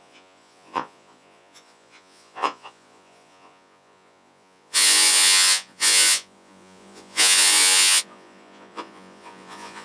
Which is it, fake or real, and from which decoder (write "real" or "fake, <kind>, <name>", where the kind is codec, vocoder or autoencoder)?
fake, vocoder, Vocos